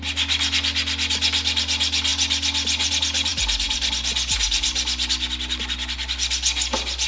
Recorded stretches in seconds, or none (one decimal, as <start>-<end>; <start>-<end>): 0.0-3.3; 3.9-7.1